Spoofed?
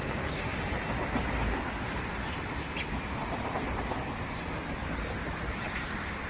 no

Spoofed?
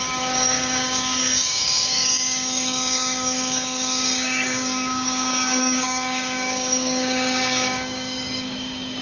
yes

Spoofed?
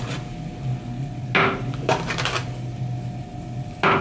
no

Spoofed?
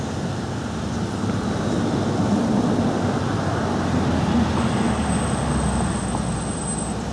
no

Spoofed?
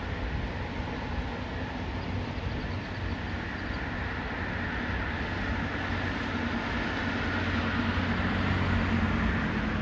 no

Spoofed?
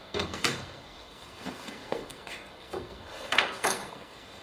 yes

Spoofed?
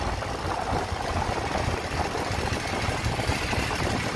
no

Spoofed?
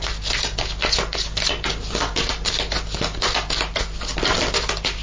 no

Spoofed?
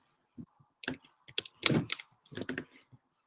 no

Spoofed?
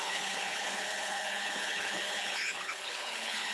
yes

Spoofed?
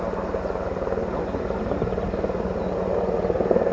no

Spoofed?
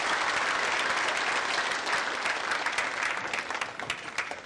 no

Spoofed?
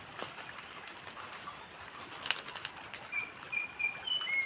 no